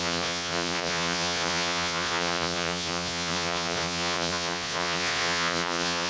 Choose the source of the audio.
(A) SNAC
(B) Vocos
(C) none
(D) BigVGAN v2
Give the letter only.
B